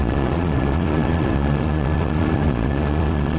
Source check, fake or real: fake